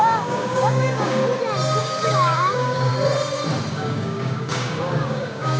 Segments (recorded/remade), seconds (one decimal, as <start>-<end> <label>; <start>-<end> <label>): 0.0-1.2 remade; 1.2-1.8 recorded; 1.8-2.9 remade; 2.9-3.7 recorded; 3.7-5.6 remade